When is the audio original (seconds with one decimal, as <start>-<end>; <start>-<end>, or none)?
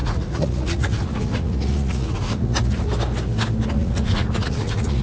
2.9-3.7